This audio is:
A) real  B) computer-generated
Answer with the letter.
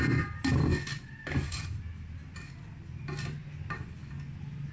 A